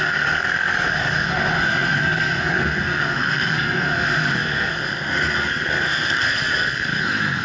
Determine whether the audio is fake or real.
fake